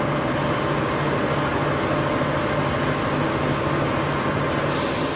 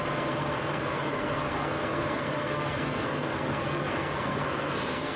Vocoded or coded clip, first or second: second